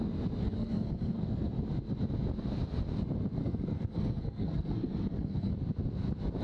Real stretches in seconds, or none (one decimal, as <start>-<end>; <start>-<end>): 0.0-0.4; 1.2-3.4; 5.5-6.4